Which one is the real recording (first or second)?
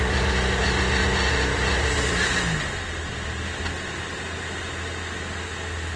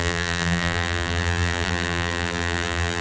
first